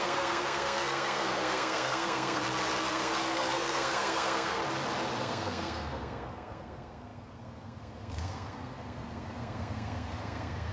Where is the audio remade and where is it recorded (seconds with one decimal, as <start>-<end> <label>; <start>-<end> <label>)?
0.0-2.4 remade; 2.4-2.9 recorded; 2.9-4.6 remade; 4.6-5.2 recorded; 5.2-10.7 remade